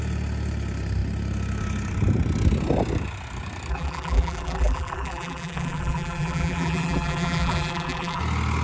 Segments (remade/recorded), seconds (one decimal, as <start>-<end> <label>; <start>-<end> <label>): 0.0-3.7 recorded; 3.7-8.2 remade; 8.2-8.6 recorded